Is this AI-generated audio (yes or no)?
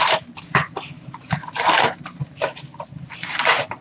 yes